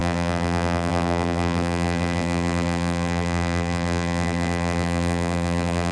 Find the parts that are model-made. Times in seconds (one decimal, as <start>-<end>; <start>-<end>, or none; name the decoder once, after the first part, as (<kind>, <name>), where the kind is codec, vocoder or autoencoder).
0.0-5.9 (vocoder, BigVGAN v2)